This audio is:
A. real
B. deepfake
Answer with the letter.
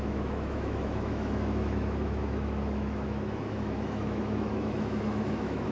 B